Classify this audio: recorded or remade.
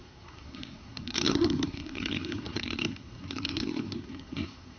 remade